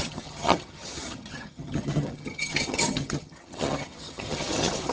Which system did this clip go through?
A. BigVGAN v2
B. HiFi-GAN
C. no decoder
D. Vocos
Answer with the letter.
B